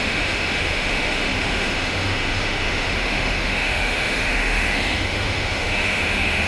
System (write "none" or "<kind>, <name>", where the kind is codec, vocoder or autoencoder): autoencoder, DAC-VAE